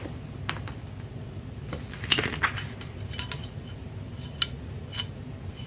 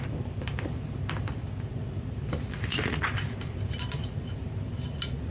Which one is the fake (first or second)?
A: second